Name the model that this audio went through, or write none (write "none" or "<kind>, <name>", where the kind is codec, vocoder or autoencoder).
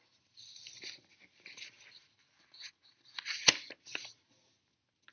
none